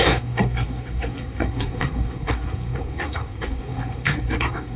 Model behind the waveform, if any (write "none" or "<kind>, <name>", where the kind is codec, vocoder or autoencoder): codec, SNAC